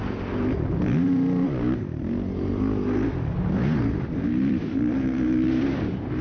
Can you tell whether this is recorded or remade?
remade